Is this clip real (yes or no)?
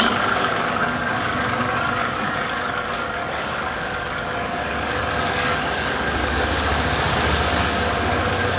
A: no